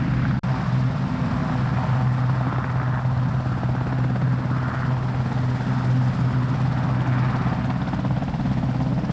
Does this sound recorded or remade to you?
recorded